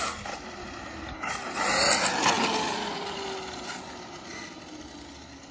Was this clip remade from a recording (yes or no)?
no